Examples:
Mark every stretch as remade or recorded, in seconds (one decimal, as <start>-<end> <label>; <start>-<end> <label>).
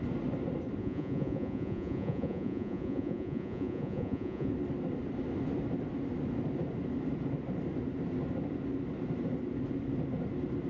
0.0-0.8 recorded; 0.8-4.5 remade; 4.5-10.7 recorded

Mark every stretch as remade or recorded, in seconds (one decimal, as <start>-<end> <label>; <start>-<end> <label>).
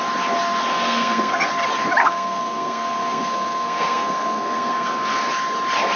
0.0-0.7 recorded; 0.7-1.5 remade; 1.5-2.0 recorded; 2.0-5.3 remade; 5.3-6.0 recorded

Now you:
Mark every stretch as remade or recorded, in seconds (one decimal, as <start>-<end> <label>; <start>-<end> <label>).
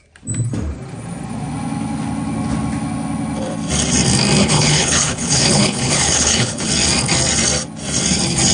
0.0-4.4 recorded; 4.4-6.7 remade; 6.7-8.5 recorded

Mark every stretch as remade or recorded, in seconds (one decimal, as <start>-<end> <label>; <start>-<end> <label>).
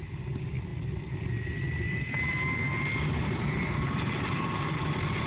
0.0-5.3 recorded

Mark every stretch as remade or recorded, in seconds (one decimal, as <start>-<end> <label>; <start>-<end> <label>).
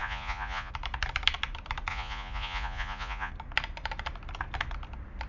0.0-0.7 remade; 0.7-1.9 recorded; 1.9-3.3 remade; 3.3-5.3 recorded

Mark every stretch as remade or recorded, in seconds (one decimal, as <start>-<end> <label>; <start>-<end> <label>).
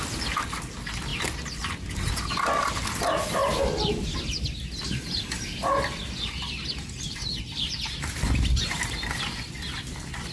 0.0-10.3 recorded